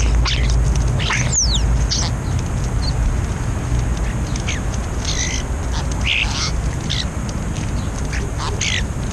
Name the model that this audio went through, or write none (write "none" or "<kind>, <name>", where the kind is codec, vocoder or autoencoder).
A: none